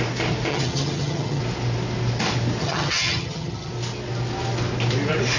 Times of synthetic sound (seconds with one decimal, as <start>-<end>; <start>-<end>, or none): 0.5-1.4; 2.6-3.7